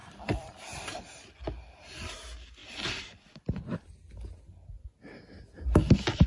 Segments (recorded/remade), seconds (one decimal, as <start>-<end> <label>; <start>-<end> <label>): 0.0-0.6 remade; 0.6-6.3 recorded